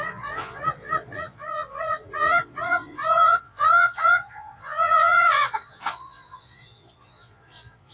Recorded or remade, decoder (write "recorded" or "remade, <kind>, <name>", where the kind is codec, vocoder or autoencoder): remade, vocoder, Vocos